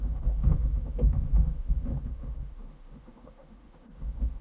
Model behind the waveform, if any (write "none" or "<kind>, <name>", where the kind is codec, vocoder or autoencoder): autoencoder, DAC-VAE